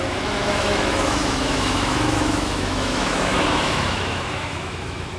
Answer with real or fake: fake